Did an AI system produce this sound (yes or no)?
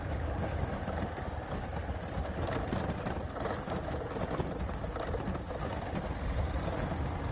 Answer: no